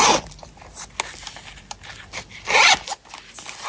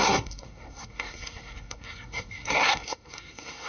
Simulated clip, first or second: second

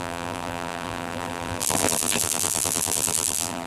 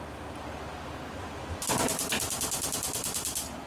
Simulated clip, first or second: first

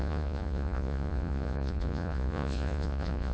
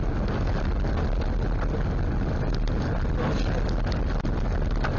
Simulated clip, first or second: first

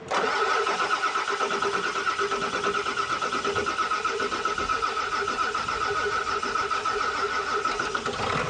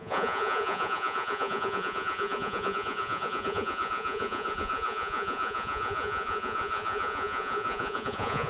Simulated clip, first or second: second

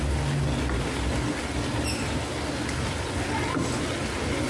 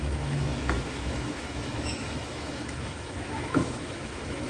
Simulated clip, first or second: second